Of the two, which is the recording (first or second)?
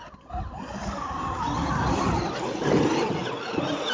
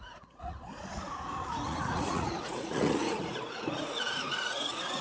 first